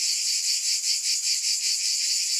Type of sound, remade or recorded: recorded